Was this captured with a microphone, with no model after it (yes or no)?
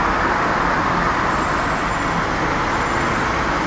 yes